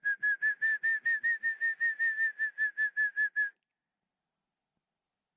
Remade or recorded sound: recorded